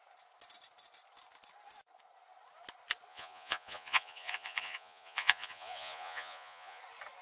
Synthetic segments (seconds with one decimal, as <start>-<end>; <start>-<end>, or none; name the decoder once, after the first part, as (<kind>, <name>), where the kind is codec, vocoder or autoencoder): 3.1-6.8 (vocoder, Vocos)